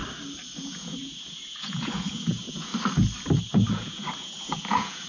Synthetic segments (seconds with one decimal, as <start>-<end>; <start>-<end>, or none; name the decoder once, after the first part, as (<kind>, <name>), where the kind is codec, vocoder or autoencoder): 0.6-2.7 (vocoder, Vocos); 3.5-5.1